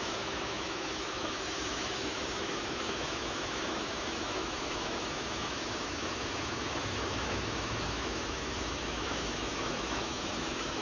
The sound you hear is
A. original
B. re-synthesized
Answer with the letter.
B